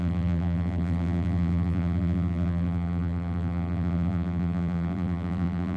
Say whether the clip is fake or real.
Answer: fake